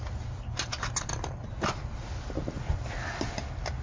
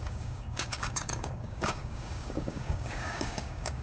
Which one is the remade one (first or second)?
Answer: second